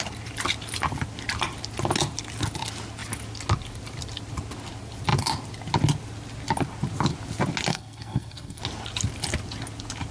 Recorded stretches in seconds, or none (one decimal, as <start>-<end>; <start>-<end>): 0.0-7.7; 8.6-10.1